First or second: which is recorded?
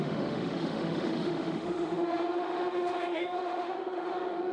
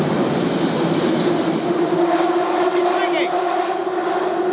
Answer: second